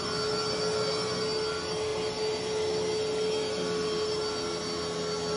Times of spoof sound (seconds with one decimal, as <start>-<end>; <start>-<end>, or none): none